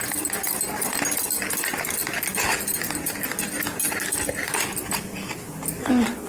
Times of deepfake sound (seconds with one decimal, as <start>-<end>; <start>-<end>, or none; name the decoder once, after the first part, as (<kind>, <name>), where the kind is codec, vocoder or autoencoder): none